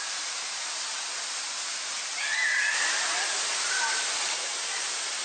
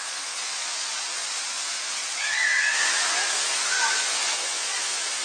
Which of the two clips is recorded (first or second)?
first